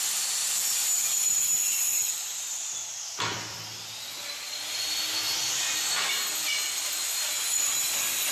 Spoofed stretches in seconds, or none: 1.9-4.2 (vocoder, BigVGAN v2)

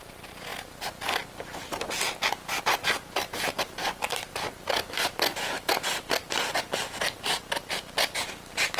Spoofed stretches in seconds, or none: none

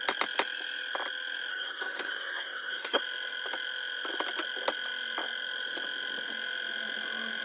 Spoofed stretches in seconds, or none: 1.5-3.0 (codec, SNAC)